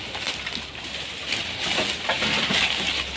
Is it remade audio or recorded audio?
recorded